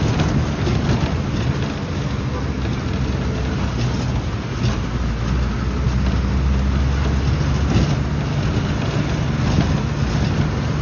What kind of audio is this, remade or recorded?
recorded